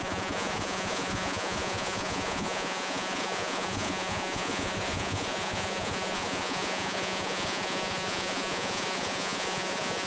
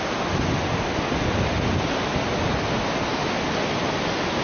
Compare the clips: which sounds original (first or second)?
second